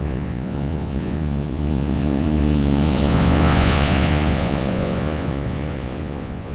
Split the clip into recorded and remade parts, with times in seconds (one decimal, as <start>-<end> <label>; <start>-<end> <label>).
0.0-6.5 remade